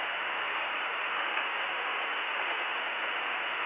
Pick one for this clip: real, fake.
fake